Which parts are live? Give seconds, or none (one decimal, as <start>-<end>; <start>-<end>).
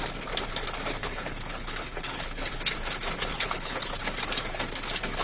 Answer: 0.0-1.0; 2.5-3.3; 4.0-5.2